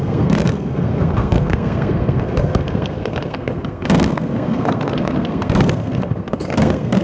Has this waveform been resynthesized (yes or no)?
yes